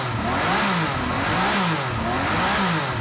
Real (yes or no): yes